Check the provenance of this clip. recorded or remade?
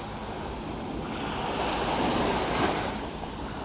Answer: recorded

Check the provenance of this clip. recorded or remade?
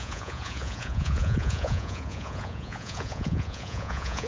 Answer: remade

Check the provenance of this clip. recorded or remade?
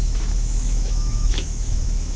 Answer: remade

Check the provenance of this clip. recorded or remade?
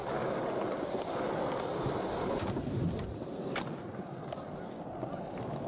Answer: recorded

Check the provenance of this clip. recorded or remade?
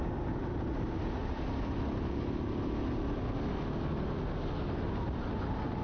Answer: recorded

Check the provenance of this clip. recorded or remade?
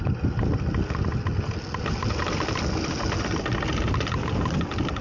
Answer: recorded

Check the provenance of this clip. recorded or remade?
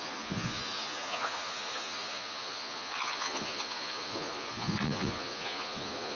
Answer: remade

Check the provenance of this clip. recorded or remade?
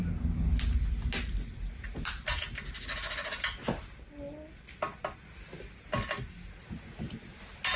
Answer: recorded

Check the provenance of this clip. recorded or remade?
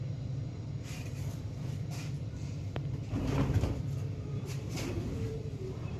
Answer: remade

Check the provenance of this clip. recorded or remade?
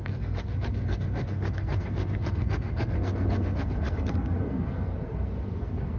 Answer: remade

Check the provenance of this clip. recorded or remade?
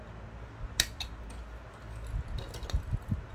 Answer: recorded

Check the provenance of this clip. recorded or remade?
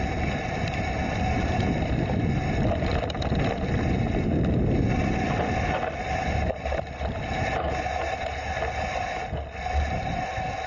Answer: recorded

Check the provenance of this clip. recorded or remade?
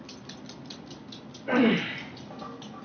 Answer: recorded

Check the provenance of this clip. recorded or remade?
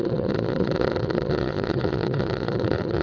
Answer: remade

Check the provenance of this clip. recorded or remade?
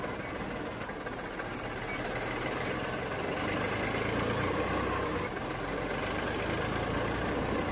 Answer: recorded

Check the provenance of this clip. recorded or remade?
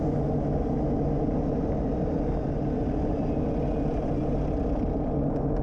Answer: recorded